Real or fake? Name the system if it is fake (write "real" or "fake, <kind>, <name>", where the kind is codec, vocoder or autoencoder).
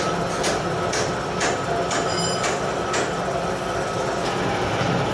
real